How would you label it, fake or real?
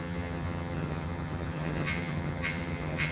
fake